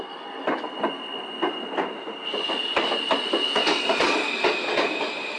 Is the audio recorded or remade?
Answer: recorded